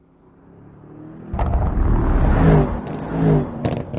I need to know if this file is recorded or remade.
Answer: recorded